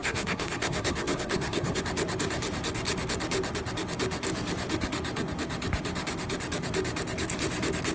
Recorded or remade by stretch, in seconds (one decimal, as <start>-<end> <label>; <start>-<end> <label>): 0.0-1.8 remade; 1.8-7.9 recorded